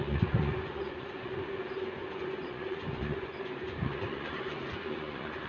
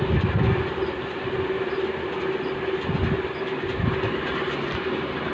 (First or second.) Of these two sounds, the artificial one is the first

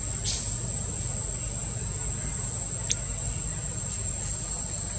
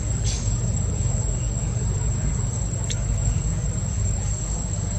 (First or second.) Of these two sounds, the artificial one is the second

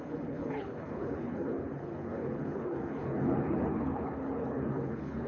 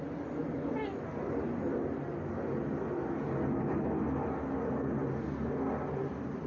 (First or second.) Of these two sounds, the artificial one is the first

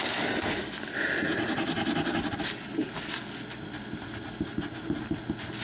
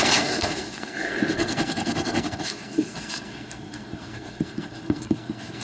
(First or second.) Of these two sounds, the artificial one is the second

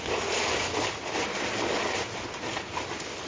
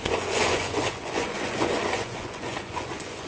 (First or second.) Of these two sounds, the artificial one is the second